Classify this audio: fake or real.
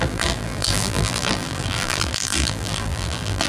fake